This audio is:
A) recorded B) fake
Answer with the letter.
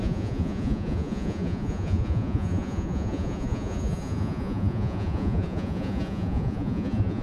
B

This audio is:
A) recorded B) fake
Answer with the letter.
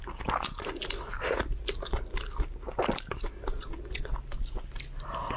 A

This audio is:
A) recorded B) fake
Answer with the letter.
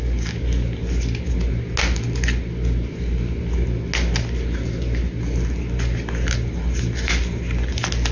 A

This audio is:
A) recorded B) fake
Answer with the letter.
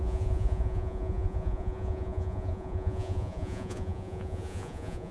B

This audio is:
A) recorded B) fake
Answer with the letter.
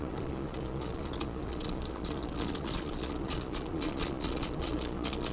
B